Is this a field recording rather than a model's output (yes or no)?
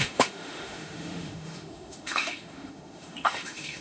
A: no